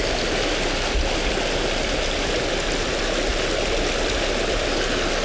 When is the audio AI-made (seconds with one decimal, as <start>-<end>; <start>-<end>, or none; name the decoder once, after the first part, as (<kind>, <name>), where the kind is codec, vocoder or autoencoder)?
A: none